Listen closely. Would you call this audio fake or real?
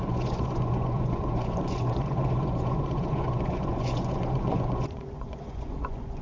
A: fake